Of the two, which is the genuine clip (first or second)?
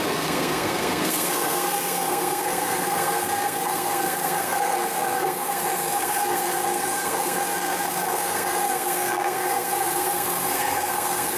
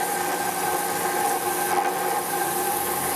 second